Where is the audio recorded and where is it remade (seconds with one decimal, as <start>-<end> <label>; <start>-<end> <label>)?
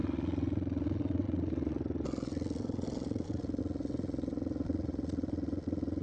0.0-6.0 remade